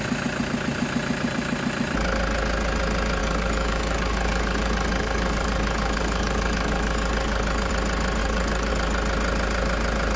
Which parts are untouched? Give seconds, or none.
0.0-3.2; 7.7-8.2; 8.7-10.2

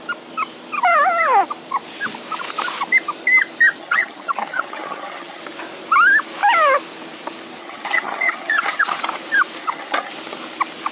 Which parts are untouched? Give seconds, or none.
0.0-3.8; 5.4-7.6; 9.0-9.6; 10.1-10.9

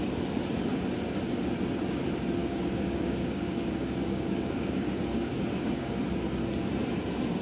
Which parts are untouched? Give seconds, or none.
0.0-2.4; 6.0-7.4